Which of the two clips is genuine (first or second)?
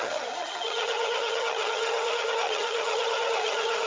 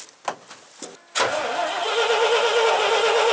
second